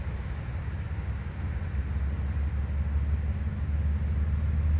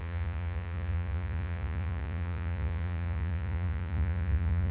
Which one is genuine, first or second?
first